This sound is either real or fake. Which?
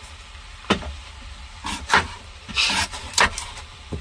fake